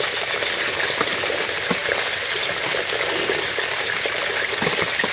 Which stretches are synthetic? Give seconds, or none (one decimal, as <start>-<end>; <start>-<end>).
none